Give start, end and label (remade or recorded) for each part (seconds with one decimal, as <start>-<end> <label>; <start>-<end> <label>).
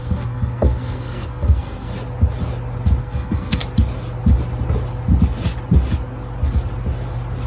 0.0-1.9 remade; 1.9-3.0 recorded; 3.0-3.6 remade; 3.6-7.5 recorded